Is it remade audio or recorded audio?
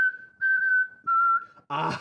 recorded